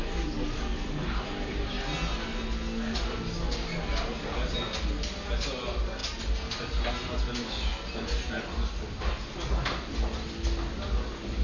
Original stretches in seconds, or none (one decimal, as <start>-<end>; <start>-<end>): 0.0-11.4